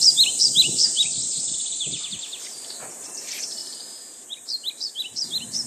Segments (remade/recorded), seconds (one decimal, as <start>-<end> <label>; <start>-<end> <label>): 0.0-5.7 remade